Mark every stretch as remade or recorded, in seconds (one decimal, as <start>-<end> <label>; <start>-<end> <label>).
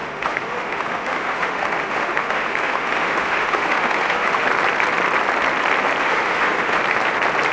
0.0-4.5 remade; 4.5-6.0 recorded; 6.0-6.8 remade; 6.8-7.5 recorded